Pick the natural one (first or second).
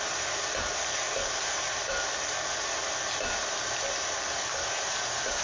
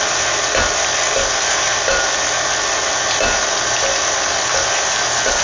second